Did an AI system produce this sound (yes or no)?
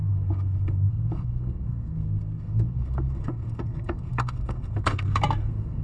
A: yes